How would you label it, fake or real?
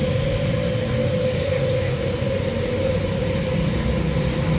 real